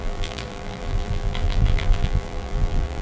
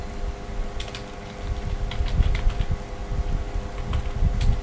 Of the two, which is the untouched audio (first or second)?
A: second